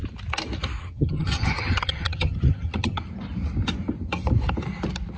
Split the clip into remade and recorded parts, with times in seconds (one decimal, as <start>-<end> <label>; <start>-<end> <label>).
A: 0.0-0.8 recorded; 0.8-3.0 remade; 3.0-5.2 recorded